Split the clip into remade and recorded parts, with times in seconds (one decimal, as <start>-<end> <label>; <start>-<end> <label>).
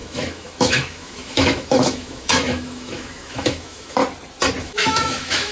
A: 0.0-4.0 remade; 4.0-4.6 recorded; 4.6-5.5 remade